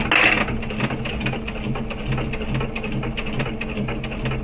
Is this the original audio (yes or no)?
yes